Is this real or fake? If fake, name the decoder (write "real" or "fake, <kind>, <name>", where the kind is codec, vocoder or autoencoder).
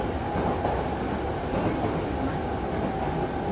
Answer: real